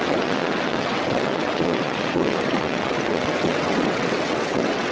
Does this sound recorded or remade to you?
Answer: remade